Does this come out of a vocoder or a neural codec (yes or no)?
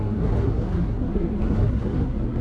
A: yes